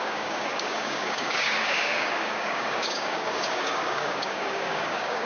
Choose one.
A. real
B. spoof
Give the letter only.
B